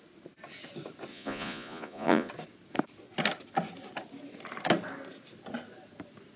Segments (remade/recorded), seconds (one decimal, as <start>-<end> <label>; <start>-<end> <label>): 0.0-1.1 recorded; 1.1-2.3 remade; 2.3-6.4 recorded